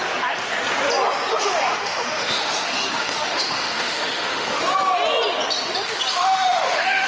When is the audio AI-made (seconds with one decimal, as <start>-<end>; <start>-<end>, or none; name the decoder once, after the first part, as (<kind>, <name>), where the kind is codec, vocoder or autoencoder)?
1.3-4.6 (autoencoder, DAC-VAE); 6.1-7.1